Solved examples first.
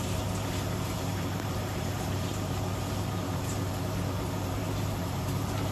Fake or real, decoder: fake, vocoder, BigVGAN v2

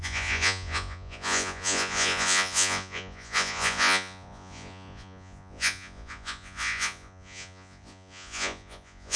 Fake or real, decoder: fake, vocoder, Vocos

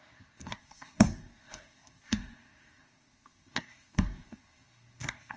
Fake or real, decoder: fake, codec, SNAC